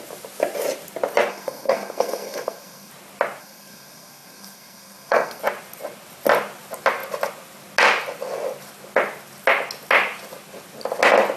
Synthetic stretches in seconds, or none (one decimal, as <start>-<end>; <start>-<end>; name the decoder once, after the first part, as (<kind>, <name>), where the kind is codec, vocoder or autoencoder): 1.3-2.9 (codec, SNAC); 3.4-5.4